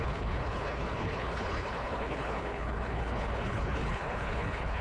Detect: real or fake fake